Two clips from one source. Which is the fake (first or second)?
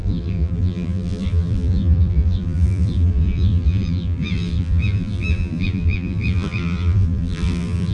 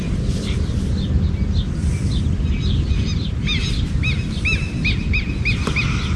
first